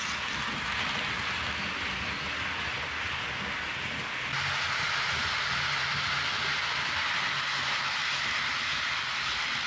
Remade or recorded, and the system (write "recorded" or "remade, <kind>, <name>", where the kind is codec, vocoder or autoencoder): recorded